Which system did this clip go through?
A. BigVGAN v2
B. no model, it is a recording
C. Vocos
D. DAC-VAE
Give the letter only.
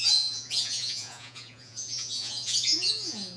C